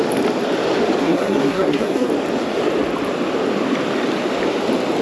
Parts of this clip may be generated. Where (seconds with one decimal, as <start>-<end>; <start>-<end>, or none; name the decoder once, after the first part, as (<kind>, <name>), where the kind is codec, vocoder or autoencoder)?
1.0-2.1 (codec, SNAC)